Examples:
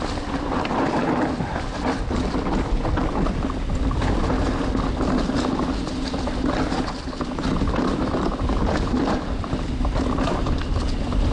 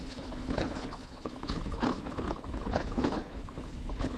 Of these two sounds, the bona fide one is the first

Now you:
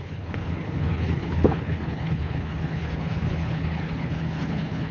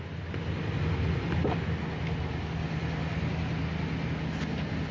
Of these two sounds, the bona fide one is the second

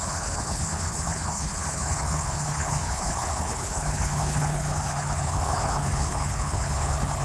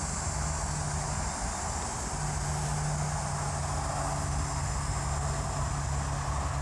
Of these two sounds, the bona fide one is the second